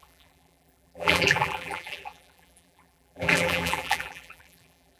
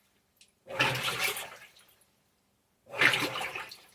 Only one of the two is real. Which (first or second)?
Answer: second